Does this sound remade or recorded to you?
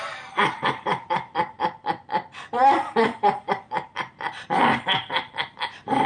remade